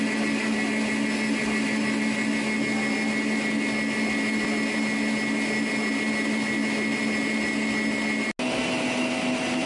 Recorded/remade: recorded